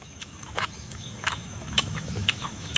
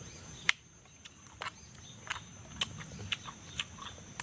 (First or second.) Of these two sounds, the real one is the second